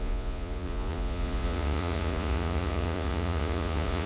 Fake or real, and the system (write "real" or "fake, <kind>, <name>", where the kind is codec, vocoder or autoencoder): fake, vocoder, Vocos